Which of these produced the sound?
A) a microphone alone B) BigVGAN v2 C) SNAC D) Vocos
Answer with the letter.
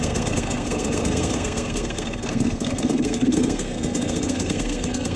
C